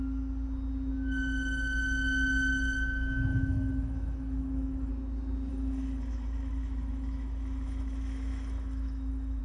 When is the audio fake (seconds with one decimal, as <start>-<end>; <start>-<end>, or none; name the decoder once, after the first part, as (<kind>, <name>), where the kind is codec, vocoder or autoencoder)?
3.3-4.9 (autoencoder, DAC-VAE); 5.5-9.4